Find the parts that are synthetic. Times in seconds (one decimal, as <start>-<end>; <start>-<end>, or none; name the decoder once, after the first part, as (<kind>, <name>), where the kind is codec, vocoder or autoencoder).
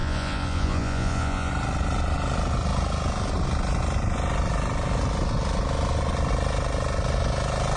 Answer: 0.0-1.5 (vocoder, Vocos)